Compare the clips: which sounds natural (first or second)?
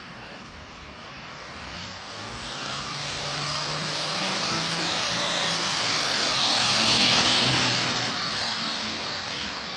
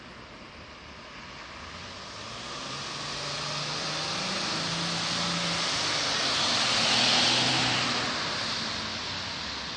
second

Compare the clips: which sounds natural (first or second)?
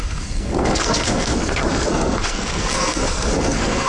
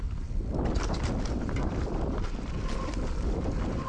second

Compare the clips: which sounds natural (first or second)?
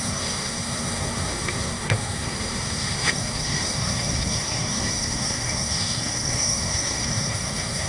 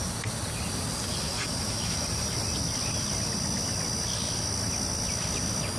second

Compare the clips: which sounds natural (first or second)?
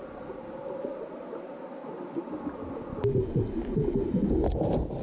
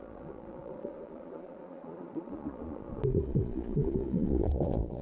first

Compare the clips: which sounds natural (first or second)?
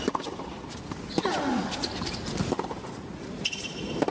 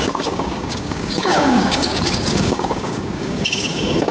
first